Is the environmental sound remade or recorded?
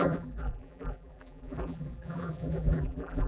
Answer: remade